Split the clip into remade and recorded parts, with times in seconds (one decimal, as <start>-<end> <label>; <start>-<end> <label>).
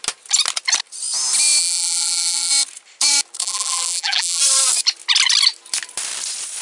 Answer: 0.0-1.6 recorded; 1.6-2.5 remade; 2.5-3.4 recorded; 3.4-4.4 remade; 4.4-6.6 recorded